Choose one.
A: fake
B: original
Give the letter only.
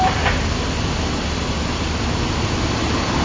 B